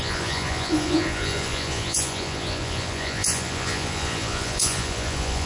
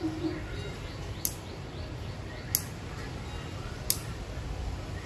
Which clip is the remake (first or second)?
first